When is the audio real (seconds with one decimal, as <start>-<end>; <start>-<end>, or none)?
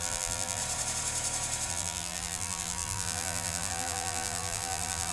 0.6-1.7